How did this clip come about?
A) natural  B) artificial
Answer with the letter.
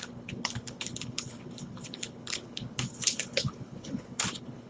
B